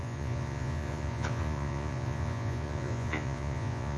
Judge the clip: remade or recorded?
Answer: remade